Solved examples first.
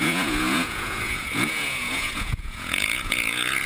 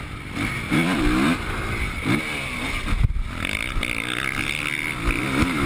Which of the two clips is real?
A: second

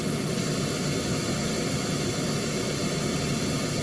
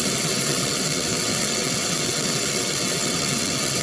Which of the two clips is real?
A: first